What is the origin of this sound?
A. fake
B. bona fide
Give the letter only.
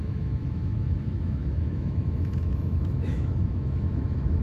A